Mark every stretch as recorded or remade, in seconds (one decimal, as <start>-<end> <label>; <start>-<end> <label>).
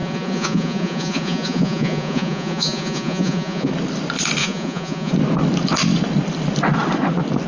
0.0-3.7 remade; 3.7-4.4 recorded; 4.4-5.1 remade; 5.1-7.5 recorded